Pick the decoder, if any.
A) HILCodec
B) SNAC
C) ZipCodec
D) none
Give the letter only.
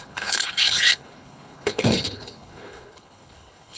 A